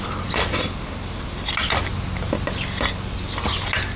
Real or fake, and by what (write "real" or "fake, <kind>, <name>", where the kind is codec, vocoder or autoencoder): real